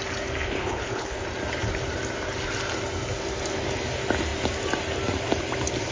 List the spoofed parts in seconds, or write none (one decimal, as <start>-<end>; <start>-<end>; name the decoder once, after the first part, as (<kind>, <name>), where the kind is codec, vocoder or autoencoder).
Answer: 0.6-1.2 (codec, HILCodec)